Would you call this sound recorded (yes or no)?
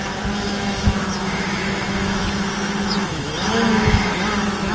no